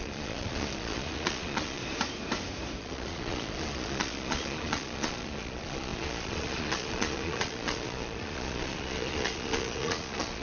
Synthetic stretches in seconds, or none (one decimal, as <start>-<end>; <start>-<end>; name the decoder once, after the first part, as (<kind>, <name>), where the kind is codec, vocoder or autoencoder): 0.0-1.8 (vocoder, Vocos); 2.8-10.4